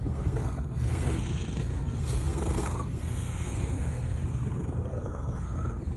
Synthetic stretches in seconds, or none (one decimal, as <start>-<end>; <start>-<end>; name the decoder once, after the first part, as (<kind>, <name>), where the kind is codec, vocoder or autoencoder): 0.0-6.0 (codec, SNAC)